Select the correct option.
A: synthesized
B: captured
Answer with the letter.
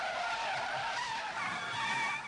B